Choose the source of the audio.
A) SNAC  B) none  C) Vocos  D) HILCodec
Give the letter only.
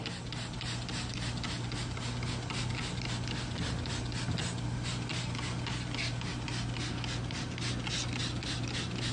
B